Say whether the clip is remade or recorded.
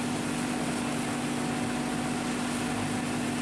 recorded